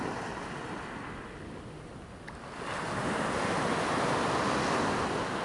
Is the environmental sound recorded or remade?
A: recorded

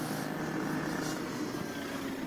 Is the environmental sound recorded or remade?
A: recorded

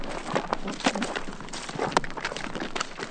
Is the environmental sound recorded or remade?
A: recorded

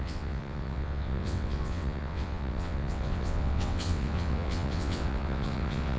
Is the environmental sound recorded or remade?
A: remade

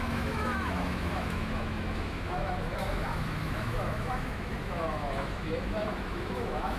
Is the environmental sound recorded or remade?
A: remade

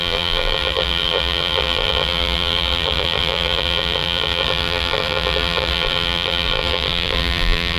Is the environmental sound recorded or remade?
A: remade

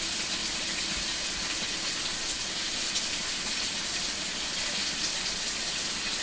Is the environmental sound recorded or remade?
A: recorded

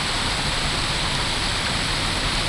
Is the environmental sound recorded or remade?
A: recorded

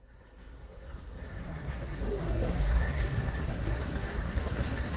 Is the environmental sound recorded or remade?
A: remade